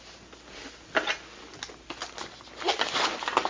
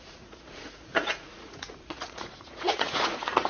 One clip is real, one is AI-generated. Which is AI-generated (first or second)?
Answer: second